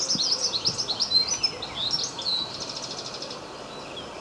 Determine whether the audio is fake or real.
real